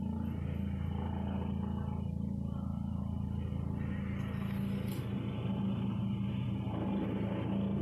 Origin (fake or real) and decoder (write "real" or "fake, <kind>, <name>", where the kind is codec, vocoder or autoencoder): real